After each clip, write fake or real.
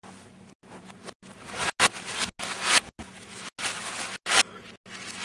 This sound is real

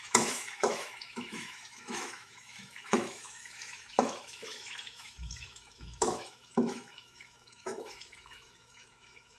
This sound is fake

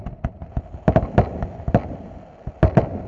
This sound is real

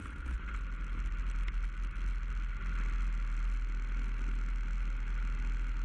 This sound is real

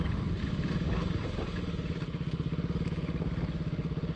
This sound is real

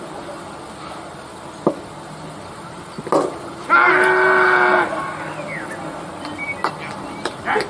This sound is real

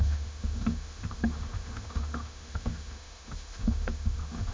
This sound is fake